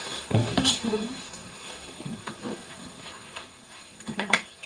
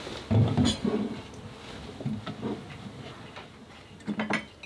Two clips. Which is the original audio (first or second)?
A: second